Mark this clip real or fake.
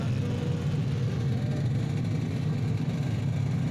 real